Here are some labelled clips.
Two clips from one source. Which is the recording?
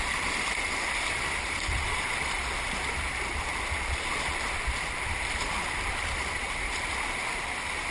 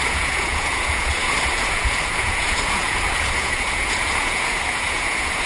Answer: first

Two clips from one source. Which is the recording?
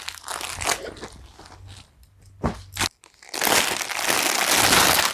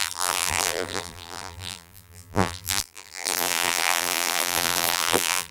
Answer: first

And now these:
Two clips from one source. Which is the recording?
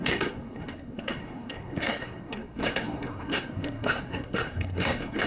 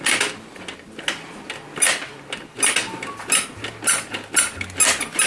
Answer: second